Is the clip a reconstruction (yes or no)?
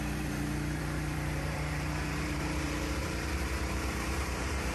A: yes